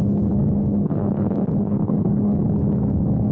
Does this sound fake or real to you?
fake